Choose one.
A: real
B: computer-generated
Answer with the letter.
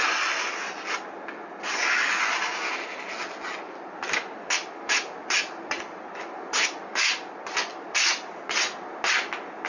A